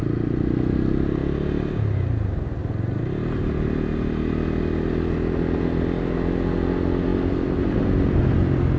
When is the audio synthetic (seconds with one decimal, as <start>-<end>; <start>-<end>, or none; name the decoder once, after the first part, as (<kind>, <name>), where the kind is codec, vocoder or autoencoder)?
none